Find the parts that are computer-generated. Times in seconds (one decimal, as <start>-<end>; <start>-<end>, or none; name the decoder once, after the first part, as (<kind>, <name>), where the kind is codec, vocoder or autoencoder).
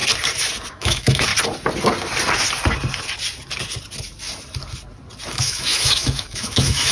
0.7-1.3 (autoencoder, DAC-VAE); 5.3-6.9